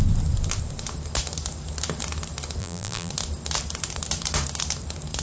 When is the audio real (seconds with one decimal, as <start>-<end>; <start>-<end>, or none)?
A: 0.0-2.6; 3.1-5.2